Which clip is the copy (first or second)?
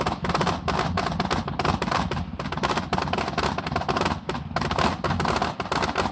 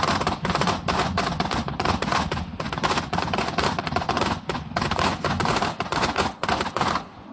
second